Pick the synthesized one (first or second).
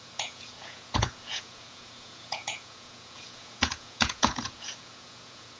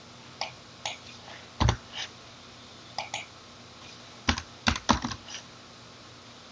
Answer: first